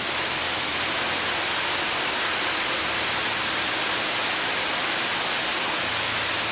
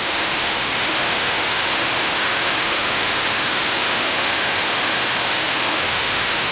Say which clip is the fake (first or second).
second